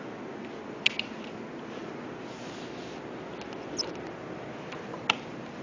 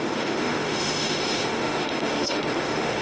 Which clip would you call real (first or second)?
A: first